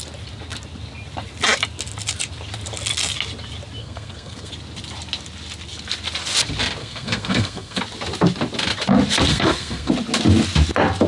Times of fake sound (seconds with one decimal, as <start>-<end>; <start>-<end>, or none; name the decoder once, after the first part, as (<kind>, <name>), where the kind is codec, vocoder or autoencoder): 3.8-4.5 (codec, SNAC); 6.8-7.8; 9.3-9.9